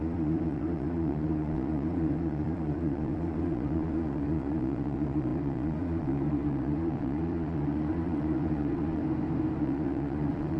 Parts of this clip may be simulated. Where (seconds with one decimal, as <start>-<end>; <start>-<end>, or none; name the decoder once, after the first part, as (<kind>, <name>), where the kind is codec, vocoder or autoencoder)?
0.0-9.0 (vocoder, Vocos); 9.6-10.6